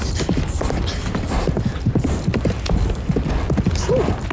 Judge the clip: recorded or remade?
remade